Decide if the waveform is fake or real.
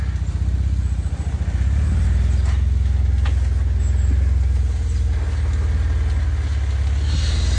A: real